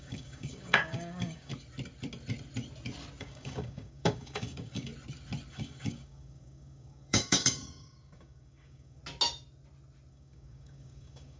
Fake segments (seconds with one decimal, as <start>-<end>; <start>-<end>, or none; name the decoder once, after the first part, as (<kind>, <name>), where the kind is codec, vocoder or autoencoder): 0.0-1.5 (codec, DAC); 3.2-4.9; 5.5-9.0; 10.1-11.4